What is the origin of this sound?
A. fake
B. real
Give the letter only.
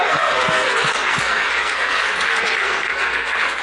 A